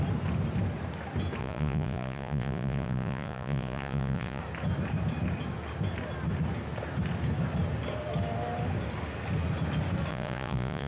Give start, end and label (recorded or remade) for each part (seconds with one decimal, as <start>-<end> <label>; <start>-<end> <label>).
0.0-1.4 recorded; 1.4-4.4 remade; 4.4-10.1 recorded; 10.1-10.9 remade